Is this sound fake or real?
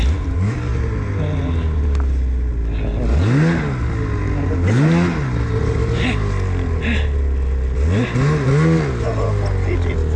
real